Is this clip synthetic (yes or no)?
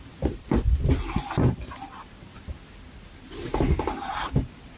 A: no